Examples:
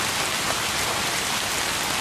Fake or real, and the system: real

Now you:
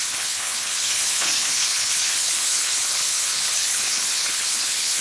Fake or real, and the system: fake, codec, HILCodec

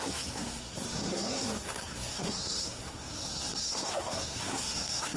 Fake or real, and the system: fake, codec, SNAC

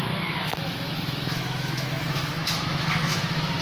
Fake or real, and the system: fake, autoencoder, DAC-VAE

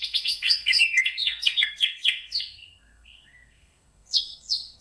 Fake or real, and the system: fake, codec, SNAC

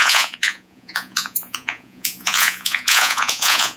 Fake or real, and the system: fake, vocoder, Vocos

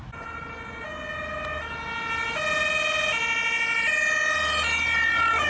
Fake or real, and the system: real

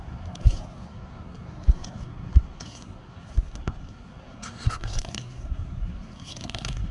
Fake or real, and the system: fake, codec, SNAC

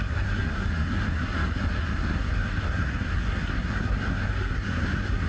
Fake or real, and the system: fake, codec, SNAC